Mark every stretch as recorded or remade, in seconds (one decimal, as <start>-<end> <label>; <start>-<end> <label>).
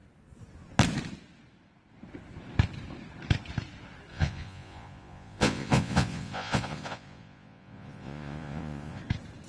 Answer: 0.0-4.1 recorded; 4.1-9.0 remade; 9.0-9.5 recorded